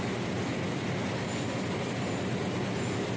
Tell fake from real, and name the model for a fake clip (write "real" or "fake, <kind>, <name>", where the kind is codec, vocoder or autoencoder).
real